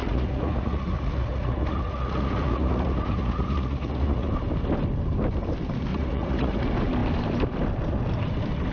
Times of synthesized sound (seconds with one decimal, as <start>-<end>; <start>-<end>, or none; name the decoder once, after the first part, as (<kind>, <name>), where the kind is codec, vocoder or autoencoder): 0.0-4.3 (vocoder, Vocos); 5.9-6.6